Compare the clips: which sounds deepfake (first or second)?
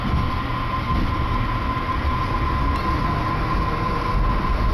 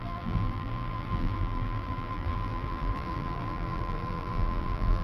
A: second